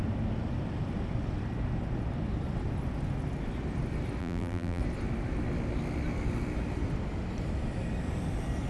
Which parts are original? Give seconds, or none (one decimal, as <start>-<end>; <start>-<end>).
0.0-4.2; 4.8-8.7